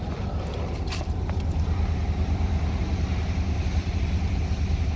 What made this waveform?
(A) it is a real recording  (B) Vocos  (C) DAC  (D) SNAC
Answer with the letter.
A